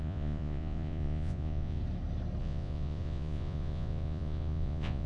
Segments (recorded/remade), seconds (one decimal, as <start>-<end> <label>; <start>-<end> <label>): 0.0-1.8 remade; 1.8-2.4 recorded; 2.4-5.1 remade